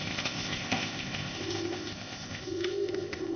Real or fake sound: fake